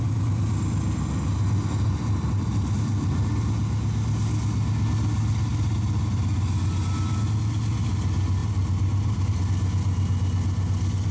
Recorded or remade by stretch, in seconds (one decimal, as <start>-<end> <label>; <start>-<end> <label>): 0.0-8.4 recorded; 8.4-9.4 remade; 9.4-11.1 recorded